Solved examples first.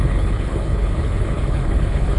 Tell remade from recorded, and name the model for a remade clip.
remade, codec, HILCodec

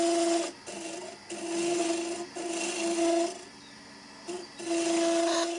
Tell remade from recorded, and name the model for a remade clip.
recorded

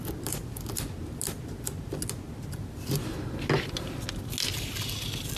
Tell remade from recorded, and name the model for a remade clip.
recorded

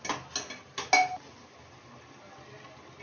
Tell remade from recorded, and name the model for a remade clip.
recorded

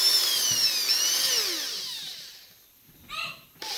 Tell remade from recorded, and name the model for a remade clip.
recorded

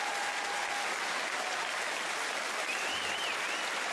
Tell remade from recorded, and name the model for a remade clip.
recorded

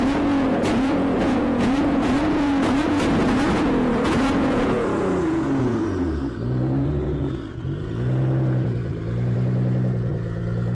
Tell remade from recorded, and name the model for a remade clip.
remade, vocoder, Vocos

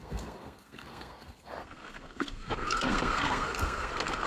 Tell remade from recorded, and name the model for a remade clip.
remade, codec, SNAC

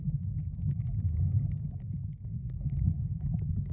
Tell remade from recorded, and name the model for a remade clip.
remade, codec, DAC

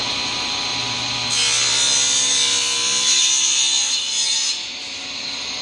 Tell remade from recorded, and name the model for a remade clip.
recorded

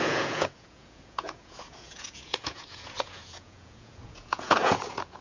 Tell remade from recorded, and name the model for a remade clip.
remade, vocoder, Vocos